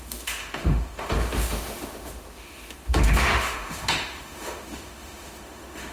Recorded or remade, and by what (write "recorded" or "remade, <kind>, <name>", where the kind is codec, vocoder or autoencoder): remade, autoencoder, DAC-VAE